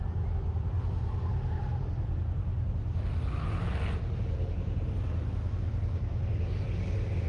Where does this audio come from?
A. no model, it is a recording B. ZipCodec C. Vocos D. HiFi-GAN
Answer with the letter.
A